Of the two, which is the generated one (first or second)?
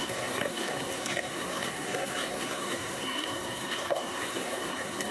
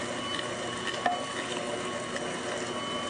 first